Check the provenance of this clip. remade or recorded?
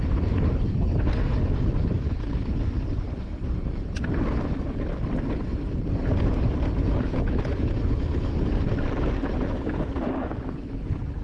recorded